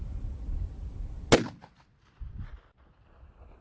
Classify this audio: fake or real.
real